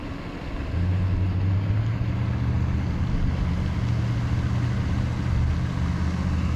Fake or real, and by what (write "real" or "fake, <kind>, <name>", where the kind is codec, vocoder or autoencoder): real